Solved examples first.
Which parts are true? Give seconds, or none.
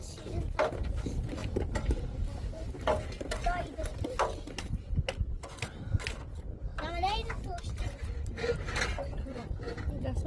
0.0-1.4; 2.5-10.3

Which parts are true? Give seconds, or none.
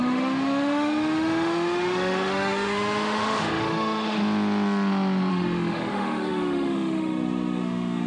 4.2-5.3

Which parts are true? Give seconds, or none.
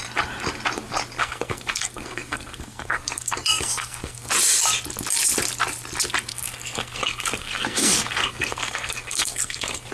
0.0-1.2; 4.3-6.3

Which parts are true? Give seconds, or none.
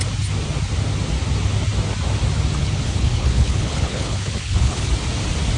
0.0-2.6; 4.9-5.6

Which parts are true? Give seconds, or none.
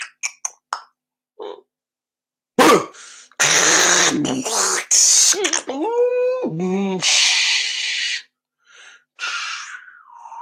0.0-6.1; 7.3-10.4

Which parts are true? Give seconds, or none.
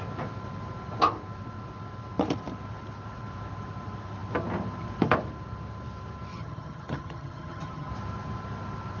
0.0-6.3; 7.9-9.0